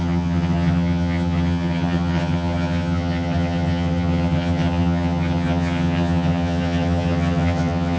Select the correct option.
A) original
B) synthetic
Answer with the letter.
B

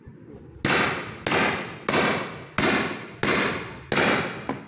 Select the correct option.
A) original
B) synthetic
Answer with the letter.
A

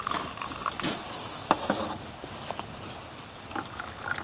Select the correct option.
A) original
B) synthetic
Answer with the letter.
A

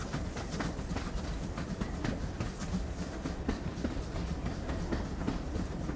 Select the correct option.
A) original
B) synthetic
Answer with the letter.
A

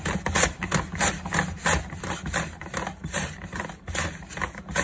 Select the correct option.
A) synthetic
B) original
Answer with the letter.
B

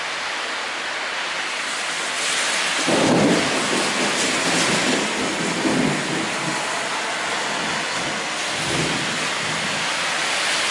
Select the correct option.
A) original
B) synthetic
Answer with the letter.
A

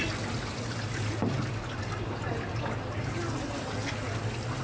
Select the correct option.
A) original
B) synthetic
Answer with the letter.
A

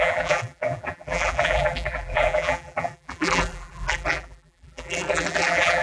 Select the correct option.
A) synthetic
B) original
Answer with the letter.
A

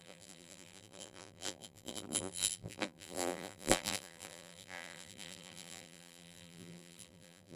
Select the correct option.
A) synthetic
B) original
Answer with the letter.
A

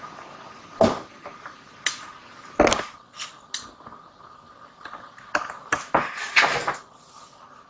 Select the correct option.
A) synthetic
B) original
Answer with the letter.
B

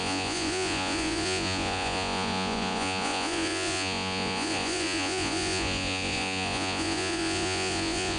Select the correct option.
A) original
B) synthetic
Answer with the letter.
B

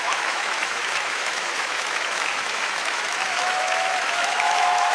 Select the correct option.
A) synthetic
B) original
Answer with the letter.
A